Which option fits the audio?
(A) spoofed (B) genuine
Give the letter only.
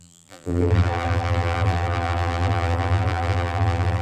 A